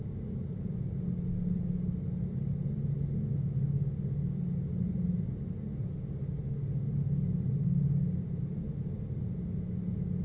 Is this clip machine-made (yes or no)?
no